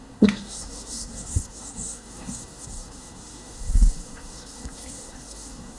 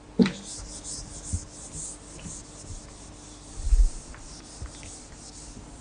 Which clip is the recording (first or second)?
second